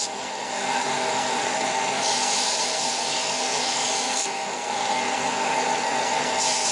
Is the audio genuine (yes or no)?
no